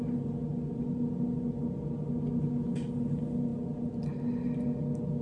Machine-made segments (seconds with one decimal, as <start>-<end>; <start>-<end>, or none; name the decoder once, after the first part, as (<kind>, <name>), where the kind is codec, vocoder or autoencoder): none

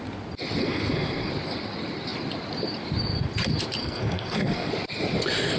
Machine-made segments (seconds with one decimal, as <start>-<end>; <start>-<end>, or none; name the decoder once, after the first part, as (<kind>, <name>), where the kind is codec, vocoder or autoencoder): 0.6-1.3 (codec, SNAC); 3.8-4.7